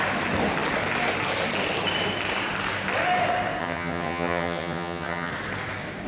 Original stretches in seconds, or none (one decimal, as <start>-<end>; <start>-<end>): 0.0-3.6; 5.3-6.1